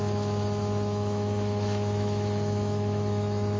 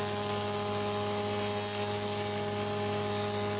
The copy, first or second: first